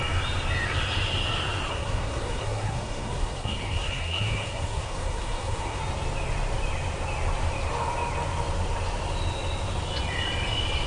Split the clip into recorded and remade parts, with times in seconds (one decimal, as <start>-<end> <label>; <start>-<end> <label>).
0.0-1.7 recorded; 1.7-5.8 remade; 5.8-10.9 recorded